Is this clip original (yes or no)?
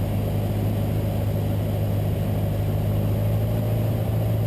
yes